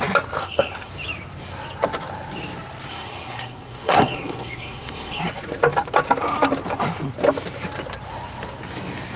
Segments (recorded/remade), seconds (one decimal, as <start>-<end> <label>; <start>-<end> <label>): 0.0-0.4 recorded; 0.4-0.9 remade; 0.9-2.9 recorded; 2.9-5.2 remade; 5.2-9.2 recorded

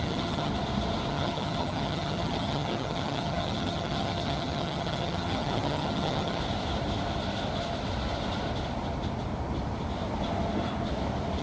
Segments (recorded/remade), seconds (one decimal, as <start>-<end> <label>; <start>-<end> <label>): 0.0-0.5 remade; 0.5-1.1 recorded; 1.1-6.4 remade; 6.4-11.4 recorded

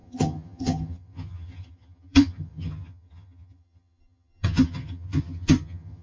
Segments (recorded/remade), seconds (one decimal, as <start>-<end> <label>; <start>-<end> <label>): 0.0-6.0 remade